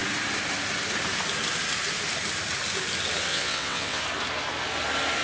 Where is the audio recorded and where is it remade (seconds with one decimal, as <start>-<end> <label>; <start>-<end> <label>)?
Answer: 0.0-3.3 recorded; 3.3-4.0 remade; 4.0-5.2 recorded